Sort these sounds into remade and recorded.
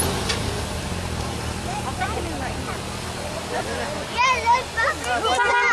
recorded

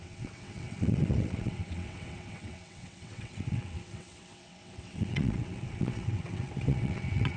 remade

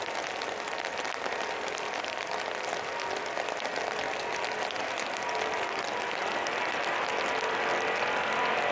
recorded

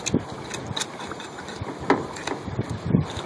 recorded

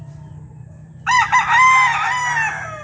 recorded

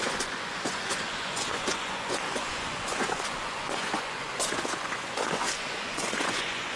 remade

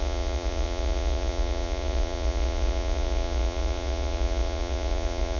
remade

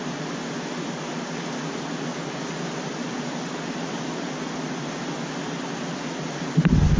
recorded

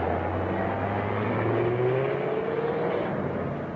recorded